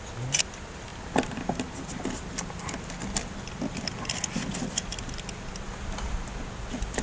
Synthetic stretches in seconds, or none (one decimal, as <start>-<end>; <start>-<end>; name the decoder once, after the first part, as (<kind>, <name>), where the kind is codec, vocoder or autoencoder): none